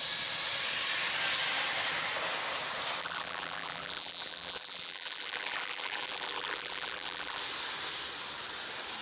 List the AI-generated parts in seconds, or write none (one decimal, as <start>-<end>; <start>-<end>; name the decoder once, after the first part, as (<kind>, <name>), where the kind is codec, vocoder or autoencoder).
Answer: 3.0-7.4 (vocoder, BigVGAN v2)